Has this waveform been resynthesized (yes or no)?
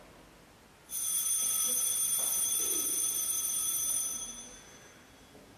no